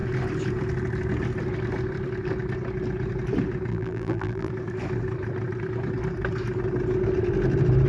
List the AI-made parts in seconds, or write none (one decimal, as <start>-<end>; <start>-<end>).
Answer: 3.7-4.5